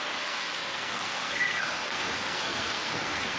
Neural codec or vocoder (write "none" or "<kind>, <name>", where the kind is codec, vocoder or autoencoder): codec, SNAC